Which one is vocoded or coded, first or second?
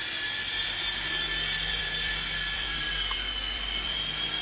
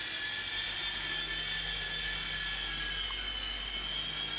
first